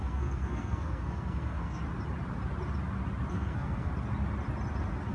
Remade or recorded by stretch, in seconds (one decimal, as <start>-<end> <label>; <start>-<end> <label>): 0.0-1.8 remade; 1.8-3.3 recorded; 3.3-3.9 remade; 3.9-5.1 recorded